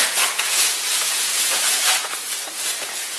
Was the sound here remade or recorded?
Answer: remade